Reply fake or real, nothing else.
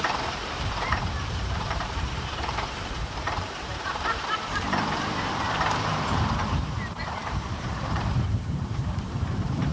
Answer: fake